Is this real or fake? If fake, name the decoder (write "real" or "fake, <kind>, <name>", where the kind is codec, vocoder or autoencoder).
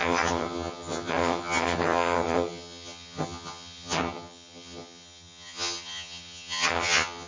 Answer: fake, vocoder, HiFi-GAN